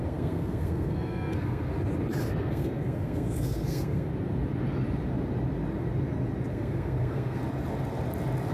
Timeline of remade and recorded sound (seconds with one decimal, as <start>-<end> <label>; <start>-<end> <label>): 0.0-1.7 remade; 1.7-2.4 recorded; 2.4-4.1 remade; 4.1-6.5 recorded; 6.5-7.4 remade; 7.4-8.5 recorded